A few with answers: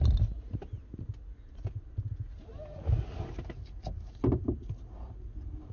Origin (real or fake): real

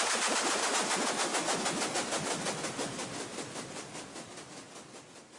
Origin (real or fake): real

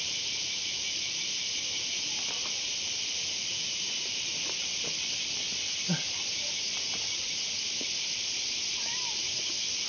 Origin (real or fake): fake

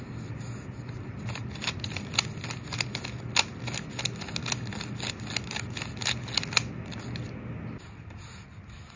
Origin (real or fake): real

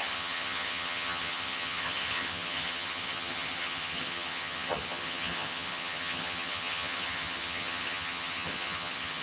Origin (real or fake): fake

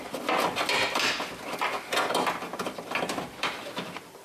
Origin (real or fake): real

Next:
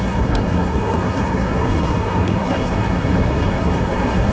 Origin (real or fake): fake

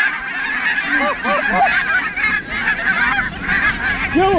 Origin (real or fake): real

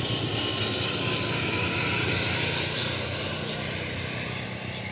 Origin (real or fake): real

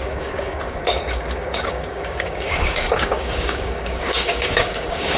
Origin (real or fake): fake